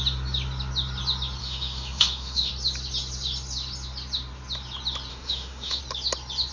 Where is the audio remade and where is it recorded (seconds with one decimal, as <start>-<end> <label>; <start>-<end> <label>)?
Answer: 0.0-1.4 recorded; 1.4-2.5 remade; 2.5-5.1 recorded; 5.1-5.8 remade; 5.8-6.5 recorded